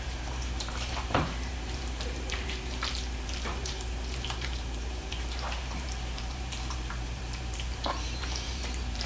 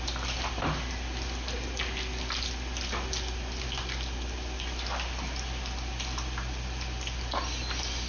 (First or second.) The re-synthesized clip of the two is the first